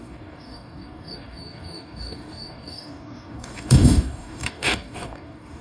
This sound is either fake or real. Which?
fake